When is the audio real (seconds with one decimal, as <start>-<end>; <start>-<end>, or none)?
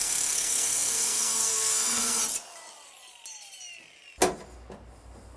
2.2-5.4